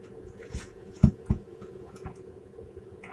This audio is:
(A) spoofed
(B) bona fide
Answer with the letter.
A